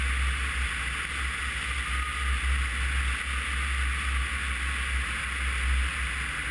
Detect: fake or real real